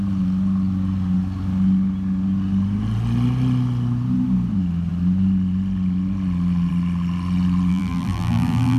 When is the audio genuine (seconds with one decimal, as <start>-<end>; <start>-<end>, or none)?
0.0-7.7